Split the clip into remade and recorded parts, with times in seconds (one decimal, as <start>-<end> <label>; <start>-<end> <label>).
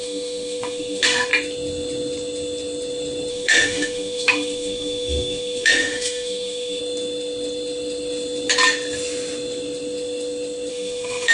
0.0-1.3 remade; 1.3-3.3 recorded; 3.3-6.8 remade; 6.8-10.7 recorded; 10.7-11.3 remade